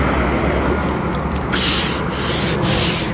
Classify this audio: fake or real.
real